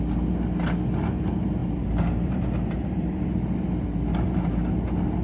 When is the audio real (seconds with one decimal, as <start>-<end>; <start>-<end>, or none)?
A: 0.0-1.6; 3.2-5.2